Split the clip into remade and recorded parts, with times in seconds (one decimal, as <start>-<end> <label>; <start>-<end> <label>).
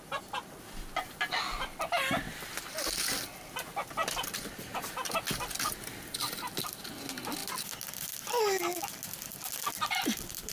0.0-10.5 recorded